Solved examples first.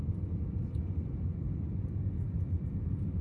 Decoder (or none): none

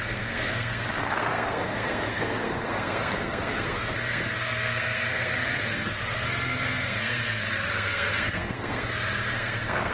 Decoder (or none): codec, SNAC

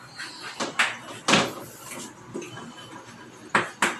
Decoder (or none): none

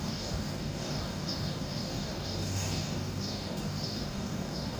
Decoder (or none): codec, DAC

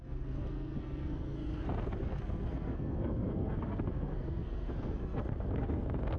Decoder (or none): codec, SNAC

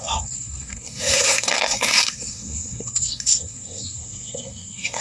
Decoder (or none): codec, SNAC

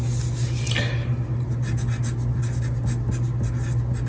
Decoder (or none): none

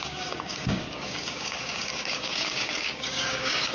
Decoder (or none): codec, DAC